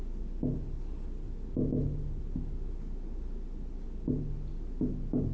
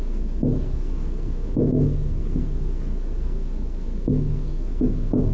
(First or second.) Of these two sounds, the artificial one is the second